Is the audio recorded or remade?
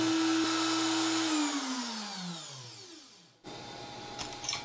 recorded